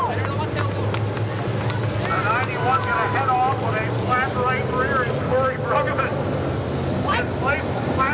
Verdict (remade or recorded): recorded